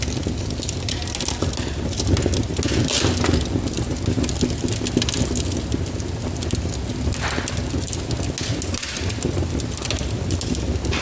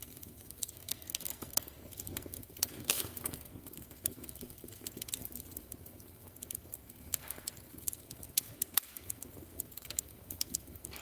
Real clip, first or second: first